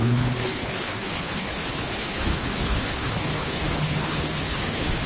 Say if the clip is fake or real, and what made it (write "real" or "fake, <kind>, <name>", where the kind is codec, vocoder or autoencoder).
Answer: fake, codec, HILCodec